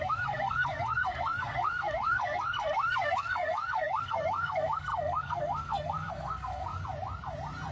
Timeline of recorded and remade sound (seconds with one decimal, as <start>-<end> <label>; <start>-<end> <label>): 0.0-6.7 remade; 6.7-7.7 recorded